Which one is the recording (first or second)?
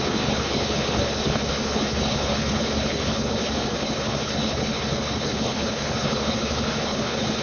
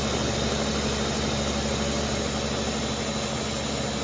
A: second